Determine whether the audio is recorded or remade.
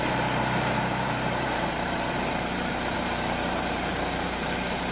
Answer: remade